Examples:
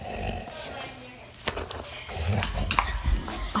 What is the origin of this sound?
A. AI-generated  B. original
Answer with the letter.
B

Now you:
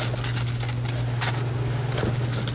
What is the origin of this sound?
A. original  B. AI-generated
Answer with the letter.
A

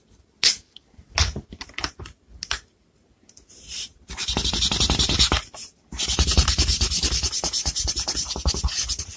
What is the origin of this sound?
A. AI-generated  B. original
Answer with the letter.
B